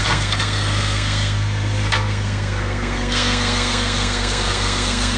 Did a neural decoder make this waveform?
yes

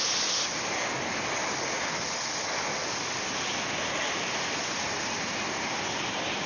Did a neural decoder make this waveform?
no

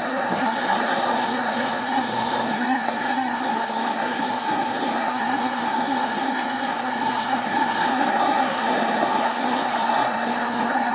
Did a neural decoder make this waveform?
yes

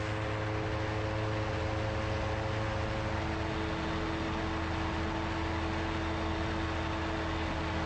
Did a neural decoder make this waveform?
no